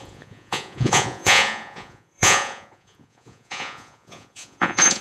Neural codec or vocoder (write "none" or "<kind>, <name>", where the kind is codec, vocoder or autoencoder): vocoder, Vocos